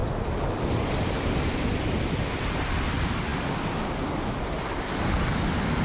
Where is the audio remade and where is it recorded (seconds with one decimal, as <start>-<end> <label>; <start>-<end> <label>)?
0.0-5.8 recorded